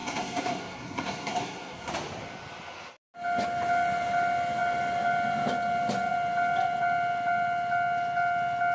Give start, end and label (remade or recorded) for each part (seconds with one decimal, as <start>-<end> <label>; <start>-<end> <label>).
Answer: 0.0-1.9 remade; 1.9-8.7 recorded